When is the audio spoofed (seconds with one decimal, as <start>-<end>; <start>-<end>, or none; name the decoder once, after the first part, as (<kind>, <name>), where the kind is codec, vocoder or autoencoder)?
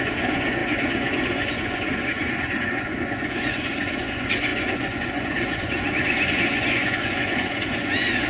0.0-8.3 (vocoder, Vocos)